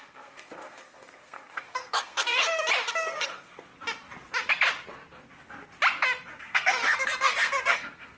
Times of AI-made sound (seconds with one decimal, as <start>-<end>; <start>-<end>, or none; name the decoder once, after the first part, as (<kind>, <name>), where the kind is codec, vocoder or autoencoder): 0.0-2.4 (codec, SNAC); 2.9-3.7; 6.4-8.2